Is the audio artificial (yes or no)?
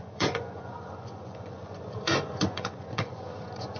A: yes